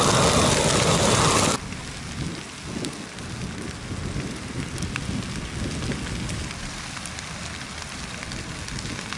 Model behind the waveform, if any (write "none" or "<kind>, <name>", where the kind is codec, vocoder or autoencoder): none